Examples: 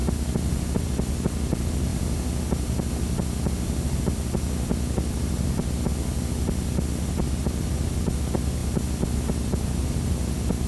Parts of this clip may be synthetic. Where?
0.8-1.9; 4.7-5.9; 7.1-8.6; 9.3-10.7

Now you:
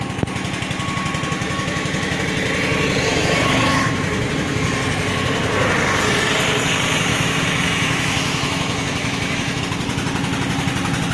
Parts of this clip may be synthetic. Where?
1.4-2.2; 3.1-4.3; 7.1-9.6

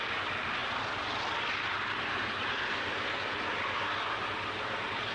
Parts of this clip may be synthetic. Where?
none

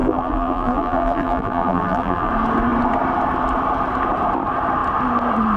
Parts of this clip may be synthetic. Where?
0.0-2.3

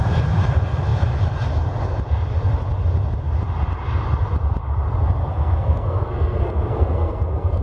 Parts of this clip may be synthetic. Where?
5.2-7.6

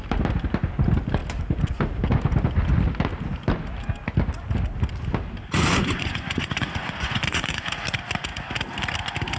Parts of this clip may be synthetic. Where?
5.4-7.7